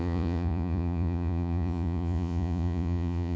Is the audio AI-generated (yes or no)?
yes